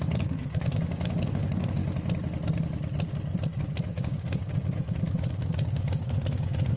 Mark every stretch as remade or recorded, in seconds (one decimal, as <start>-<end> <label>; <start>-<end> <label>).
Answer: 0.0-1.8 remade; 1.8-3.9 recorded; 3.9-6.8 remade